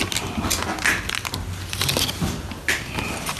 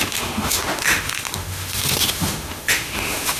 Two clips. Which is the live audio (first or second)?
first